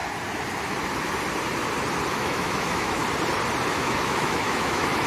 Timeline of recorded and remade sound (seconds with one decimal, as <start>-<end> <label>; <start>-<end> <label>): 0.0-2.1 recorded; 2.1-3.0 remade; 3.0-3.7 recorded; 3.7-5.1 remade